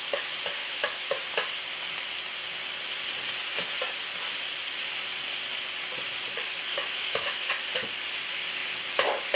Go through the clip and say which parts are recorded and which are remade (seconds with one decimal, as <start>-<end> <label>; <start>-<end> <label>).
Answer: 0.0-0.6 recorded; 0.6-1.2 remade; 1.2-6.7 recorded; 6.7-7.5 remade; 7.5-9.4 recorded